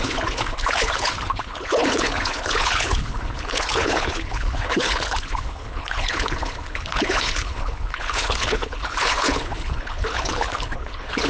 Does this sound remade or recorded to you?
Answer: remade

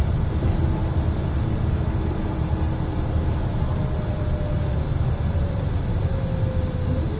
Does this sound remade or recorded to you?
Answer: recorded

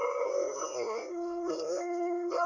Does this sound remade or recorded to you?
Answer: remade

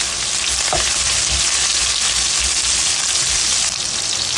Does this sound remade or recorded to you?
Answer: recorded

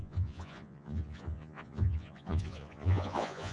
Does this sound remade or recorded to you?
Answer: remade